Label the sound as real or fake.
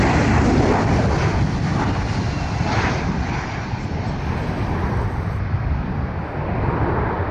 fake